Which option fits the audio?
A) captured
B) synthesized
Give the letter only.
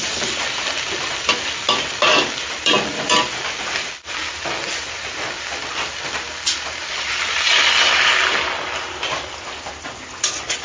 B